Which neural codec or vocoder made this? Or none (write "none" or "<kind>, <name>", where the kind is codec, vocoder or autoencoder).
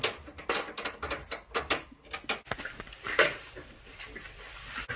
none